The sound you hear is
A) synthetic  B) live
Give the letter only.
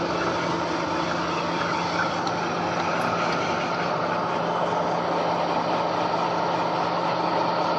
B